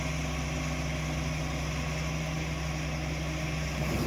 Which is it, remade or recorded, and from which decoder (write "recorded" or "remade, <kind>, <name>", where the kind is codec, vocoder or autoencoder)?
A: recorded